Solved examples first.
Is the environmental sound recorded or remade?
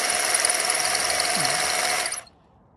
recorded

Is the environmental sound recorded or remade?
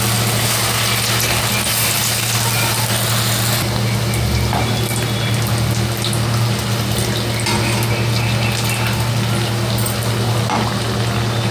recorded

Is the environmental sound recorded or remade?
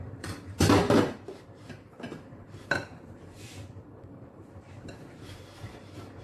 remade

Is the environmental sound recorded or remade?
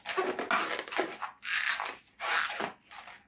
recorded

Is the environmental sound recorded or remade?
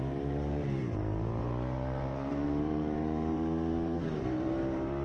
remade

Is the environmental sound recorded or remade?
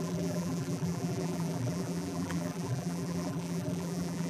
remade